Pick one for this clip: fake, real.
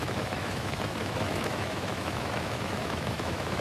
fake